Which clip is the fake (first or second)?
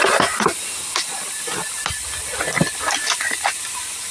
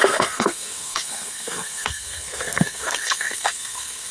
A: second